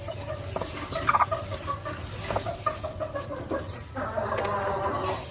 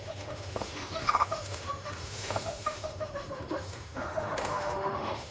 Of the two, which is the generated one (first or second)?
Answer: second